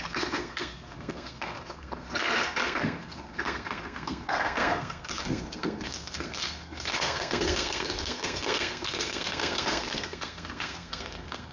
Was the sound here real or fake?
fake